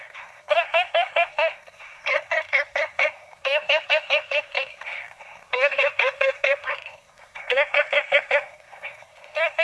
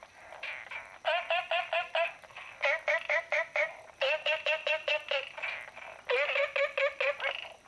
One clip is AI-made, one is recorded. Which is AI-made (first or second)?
first